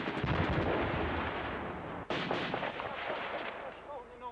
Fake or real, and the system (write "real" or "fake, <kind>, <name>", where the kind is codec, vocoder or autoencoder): real